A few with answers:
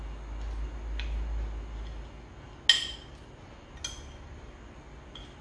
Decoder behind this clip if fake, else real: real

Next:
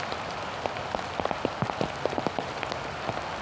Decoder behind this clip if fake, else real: real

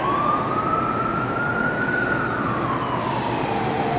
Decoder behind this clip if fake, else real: real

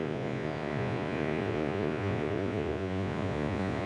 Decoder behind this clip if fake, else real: fake, vocoder, Vocos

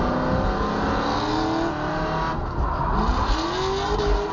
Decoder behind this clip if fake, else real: real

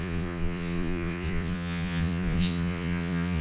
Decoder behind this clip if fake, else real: fake, vocoder, Vocos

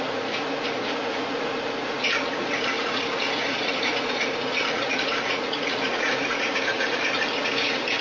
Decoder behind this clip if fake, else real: fake, vocoder, Vocos